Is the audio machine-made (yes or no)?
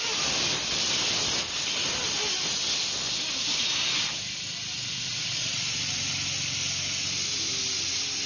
no